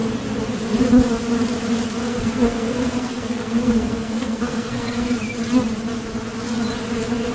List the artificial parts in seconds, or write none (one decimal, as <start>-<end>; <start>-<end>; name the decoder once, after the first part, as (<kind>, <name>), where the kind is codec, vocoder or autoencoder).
2.0-5.1 (codec, SNAC)